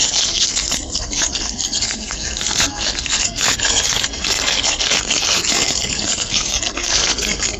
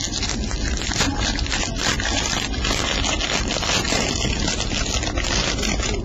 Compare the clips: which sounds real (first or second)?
second